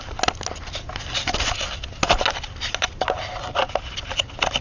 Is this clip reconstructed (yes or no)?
no